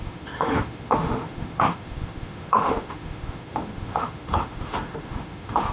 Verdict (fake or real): fake